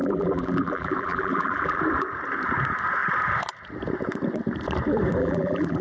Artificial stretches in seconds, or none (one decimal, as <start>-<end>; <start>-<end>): 0.0-1.8; 5.2-5.8